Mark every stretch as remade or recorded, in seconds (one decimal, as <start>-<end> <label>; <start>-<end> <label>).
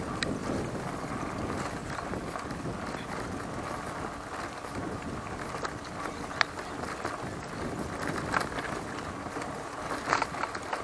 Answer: 0.0-0.4 recorded; 0.4-1.0 remade; 1.0-10.8 recorded